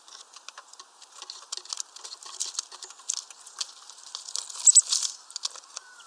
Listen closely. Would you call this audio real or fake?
real